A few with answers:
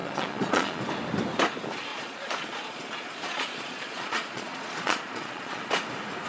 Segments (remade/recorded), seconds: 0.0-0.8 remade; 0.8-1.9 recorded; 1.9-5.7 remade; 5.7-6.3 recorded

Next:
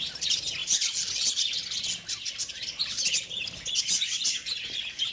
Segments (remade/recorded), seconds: 0.0-5.1 recorded

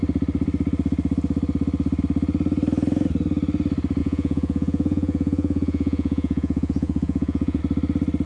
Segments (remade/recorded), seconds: 0.0-4.0 recorded; 4.0-7.6 remade; 7.6-8.3 recorded

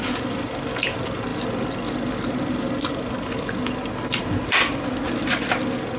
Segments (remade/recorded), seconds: 0.0-6.0 recorded

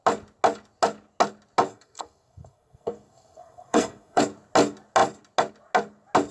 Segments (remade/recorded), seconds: 0.0-1.7 recorded; 1.7-4.2 remade; 4.2-6.3 recorded